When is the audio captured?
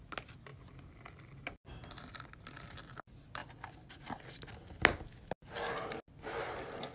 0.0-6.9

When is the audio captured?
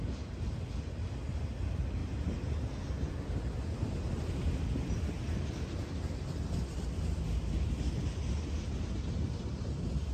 0.0-10.1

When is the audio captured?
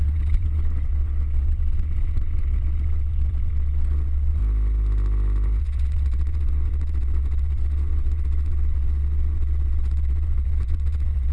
4.4-5.6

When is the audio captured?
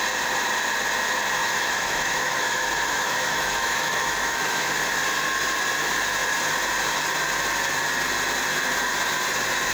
0.0-1.4; 4.7-9.7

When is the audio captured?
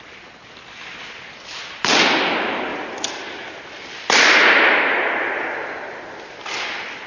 0.0-7.1